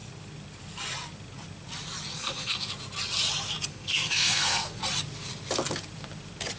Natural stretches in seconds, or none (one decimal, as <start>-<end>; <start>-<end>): 0.0-2.1; 2.7-3.7; 4.8-6.6